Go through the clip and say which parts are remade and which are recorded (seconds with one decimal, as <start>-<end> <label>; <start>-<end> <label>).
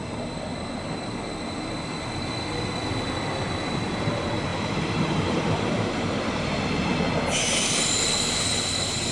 0.0-4.5 recorded; 4.5-6.6 remade; 6.6-9.1 recorded